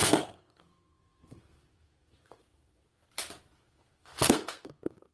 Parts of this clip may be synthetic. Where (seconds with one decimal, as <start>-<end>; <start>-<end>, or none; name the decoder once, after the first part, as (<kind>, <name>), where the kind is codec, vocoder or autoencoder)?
0.0-3.0 (codec, SNAC); 3.6-5.1